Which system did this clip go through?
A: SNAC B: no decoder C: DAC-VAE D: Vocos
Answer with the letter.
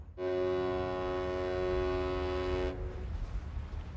B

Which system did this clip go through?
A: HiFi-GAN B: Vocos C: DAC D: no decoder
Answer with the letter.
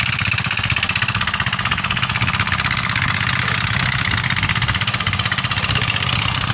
D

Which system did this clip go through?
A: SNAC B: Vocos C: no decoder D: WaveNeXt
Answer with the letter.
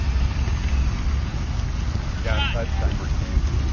C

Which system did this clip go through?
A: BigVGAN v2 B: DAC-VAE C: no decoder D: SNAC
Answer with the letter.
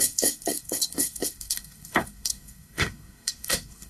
D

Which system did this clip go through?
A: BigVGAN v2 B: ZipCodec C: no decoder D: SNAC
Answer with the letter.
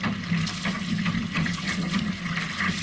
C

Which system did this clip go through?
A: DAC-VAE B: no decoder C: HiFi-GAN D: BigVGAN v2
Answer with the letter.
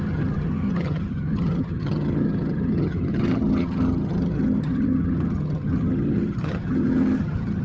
C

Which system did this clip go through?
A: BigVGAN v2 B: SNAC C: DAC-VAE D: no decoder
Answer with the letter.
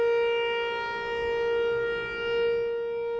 D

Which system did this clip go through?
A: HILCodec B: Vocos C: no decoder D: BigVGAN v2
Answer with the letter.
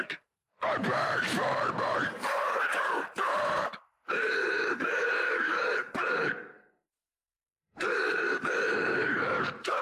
D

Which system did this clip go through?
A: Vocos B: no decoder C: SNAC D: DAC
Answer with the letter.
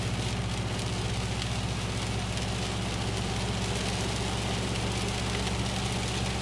B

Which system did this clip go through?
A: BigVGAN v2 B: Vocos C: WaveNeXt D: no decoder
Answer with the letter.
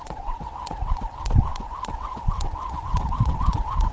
C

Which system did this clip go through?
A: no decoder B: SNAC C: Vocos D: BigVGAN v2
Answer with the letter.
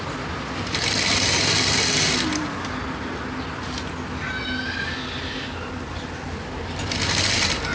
A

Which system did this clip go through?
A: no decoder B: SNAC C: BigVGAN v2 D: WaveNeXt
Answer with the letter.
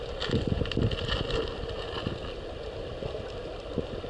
A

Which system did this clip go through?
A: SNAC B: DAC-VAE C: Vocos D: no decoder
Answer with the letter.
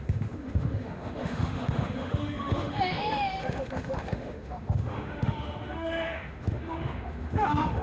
B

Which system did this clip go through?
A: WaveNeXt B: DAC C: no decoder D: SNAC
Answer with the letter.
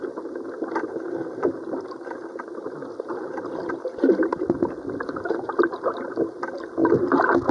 C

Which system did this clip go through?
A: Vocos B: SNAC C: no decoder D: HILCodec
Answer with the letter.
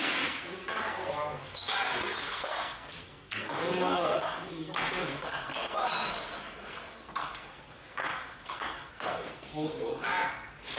B